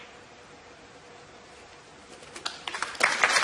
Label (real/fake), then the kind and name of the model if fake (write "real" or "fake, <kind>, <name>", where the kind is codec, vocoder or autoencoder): real